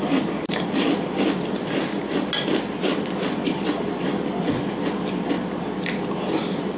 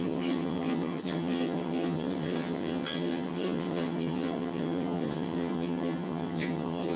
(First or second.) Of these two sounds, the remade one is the second